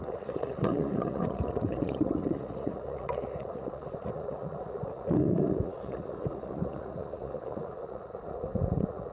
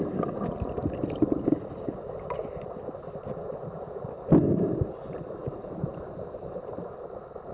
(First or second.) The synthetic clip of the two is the first